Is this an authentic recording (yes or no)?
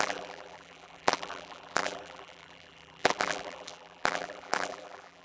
no